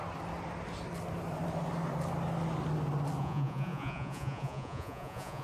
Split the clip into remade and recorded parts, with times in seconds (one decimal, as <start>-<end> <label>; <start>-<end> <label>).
0.0-3.2 recorded; 3.2-5.4 remade